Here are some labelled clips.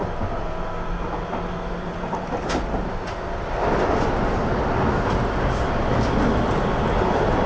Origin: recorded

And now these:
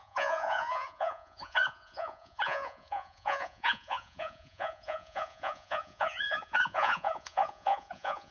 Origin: remade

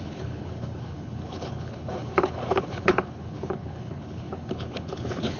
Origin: remade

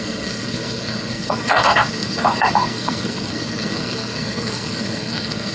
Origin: remade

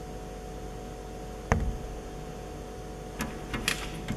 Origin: recorded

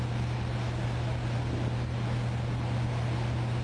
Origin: recorded